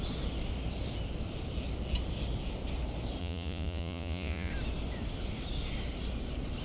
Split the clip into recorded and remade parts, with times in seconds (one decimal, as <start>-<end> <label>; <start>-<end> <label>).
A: 0.0-3.2 recorded; 3.2-4.5 remade; 4.5-6.6 recorded